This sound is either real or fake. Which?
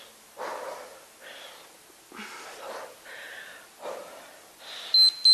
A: real